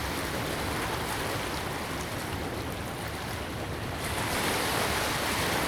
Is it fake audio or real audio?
real